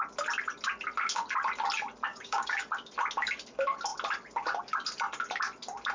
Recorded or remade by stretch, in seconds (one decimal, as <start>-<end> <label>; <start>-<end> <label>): 0.0-2.1 recorded; 2.1-2.6 remade; 2.6-5.9 recorded